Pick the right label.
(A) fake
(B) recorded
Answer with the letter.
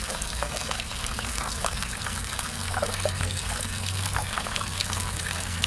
A